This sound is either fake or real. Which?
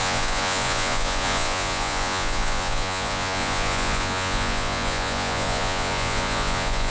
fake